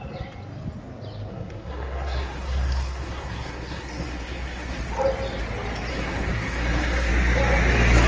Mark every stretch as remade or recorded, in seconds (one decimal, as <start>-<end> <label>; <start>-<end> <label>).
0.0-1.3 recorded; 1.3-4.8 remade; 4.8-5.9 recorded; 5.9-7.1 remade; 7.1-8.1 recorded